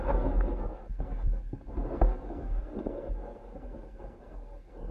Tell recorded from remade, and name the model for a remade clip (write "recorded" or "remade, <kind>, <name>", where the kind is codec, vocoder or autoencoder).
remade, codec, SNAC